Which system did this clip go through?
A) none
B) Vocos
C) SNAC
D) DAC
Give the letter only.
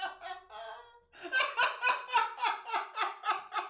A